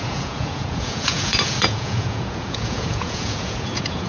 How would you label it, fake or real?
fake